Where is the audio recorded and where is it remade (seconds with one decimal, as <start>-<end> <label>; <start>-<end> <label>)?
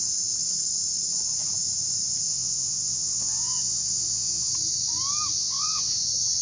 0.0-2.3 recorded; 2.3-4.5 remade; 4.5-5.4 recorded; 5.4-5.9 remade; 5.9-6.4 recorded